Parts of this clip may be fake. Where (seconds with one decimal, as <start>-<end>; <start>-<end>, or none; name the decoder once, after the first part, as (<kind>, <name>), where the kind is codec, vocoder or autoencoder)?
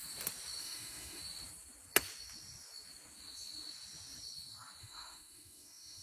0.6-1.2 (autoencoder, DAC-VAE); 4.8-6.0